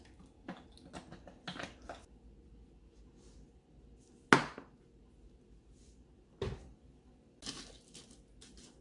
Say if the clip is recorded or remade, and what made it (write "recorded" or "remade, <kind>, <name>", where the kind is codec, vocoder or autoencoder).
recorded